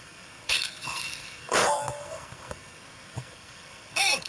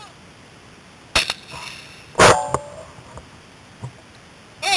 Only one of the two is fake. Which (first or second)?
first